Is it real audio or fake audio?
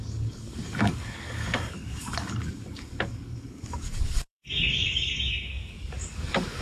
fake